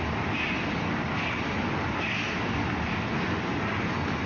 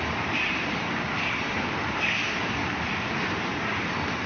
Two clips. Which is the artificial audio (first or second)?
second